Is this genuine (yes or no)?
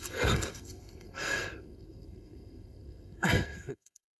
no